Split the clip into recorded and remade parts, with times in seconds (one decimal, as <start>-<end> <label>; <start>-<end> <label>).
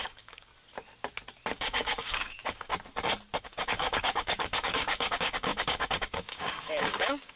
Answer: 0.0-0.5 remade; 0.5-1.5 recorded; 1.5-2.7 remade; 2.7-3.4 recorded; 3.4-7.4 remade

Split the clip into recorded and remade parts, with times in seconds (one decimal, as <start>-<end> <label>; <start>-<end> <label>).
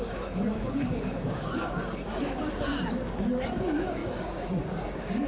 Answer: 0.0-5.3 remade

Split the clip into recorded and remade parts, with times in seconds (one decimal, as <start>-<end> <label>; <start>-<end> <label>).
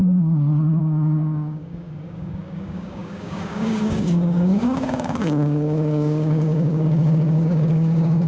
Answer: 0.0-0.8 recorded; 0.8-8.3 remade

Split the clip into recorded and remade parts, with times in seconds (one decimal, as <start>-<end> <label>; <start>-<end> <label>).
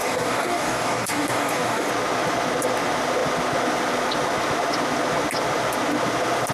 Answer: 0.0-1.9 remade; 1.9-6.5 recorded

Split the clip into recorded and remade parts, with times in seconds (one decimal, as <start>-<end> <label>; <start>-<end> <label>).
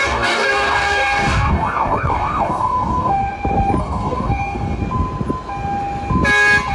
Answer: 0.0-3.2 remade; 3.2-3.8 recorded; 3.8-4.8 remade; 4.8-6.7 recorded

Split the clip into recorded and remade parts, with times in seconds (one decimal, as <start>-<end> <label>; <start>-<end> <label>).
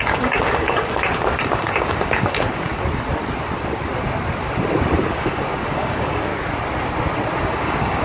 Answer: 0.0-2.7 remade; 2.7-5.1 recorded; 5.1-6.3 remade; 6.3-7.4 recorded; 7.4-8.0 remade